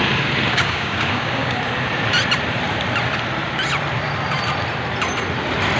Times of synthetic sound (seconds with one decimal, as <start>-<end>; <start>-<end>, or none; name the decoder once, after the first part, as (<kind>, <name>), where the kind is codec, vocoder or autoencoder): 0.5-1.6 (codec, DAC)